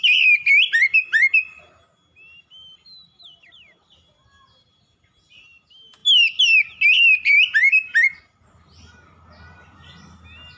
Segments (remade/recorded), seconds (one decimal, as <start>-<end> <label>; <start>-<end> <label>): 0.0-1.2 remade; 1.2-2.4 recorded; 2.4-10.6 remade